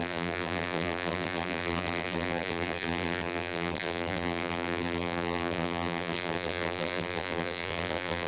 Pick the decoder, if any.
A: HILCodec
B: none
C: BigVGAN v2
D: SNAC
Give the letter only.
C